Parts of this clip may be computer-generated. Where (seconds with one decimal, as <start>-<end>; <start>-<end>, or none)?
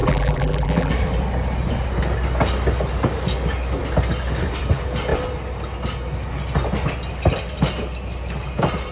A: 0.0-0.9